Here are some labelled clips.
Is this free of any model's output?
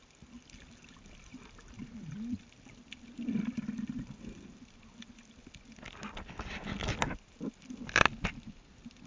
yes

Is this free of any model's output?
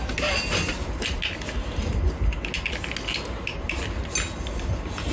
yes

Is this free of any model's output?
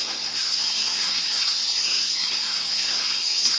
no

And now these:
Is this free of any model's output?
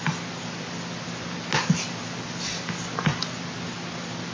yes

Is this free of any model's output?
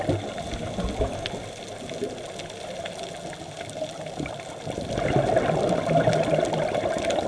yes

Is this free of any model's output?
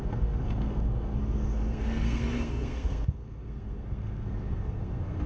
no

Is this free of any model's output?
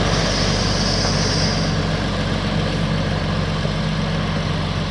yes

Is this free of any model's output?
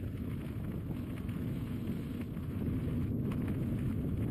yes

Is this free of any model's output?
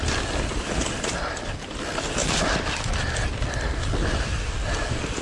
yes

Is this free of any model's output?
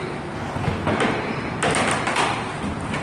yes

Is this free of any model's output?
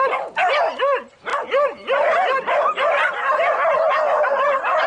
yes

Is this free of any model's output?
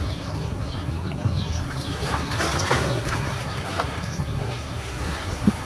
no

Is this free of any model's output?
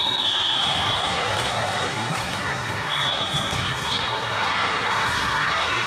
no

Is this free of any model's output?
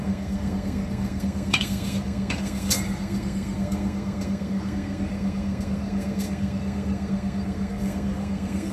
no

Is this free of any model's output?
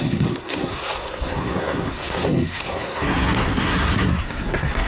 no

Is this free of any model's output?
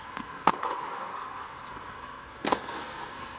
no